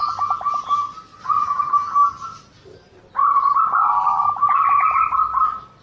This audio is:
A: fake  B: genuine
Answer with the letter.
B